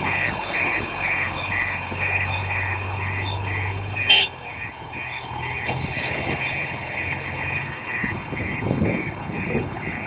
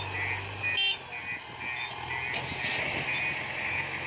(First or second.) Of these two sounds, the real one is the second